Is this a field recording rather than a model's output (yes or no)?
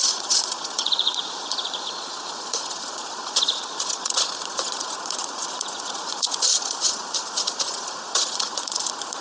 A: no